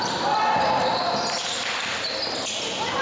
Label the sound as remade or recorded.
recorded